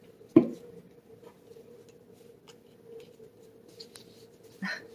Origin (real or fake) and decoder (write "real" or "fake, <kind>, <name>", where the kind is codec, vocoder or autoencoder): real